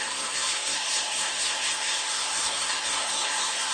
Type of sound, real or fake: fake